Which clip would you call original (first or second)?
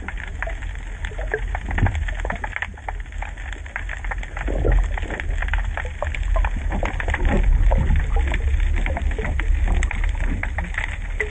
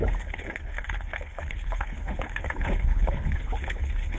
first